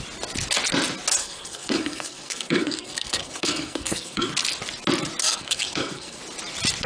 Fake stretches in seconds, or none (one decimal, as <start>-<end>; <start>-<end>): 1.2-4.3; 5.2-6.2